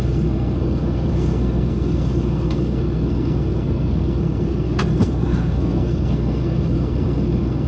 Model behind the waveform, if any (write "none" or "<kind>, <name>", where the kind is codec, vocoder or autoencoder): codec, SNAC